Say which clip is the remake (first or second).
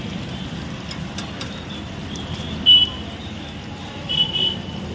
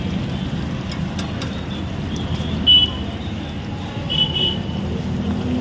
first